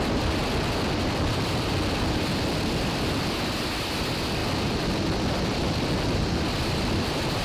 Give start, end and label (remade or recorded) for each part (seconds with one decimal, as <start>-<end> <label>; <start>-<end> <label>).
0.0-7.4 recorded